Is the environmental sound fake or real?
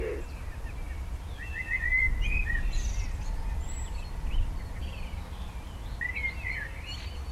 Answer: real